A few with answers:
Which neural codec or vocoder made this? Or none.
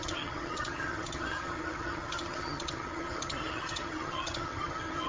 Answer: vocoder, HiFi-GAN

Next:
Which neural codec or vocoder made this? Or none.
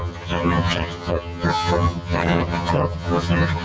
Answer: vocoder, HiFi-GAN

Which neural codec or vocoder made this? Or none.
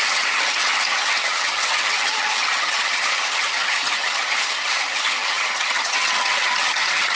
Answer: vocoder, HiFi-GAN